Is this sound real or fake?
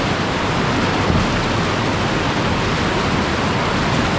real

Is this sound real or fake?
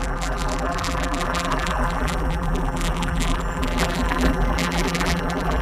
fake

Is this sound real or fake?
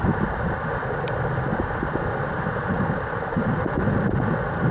real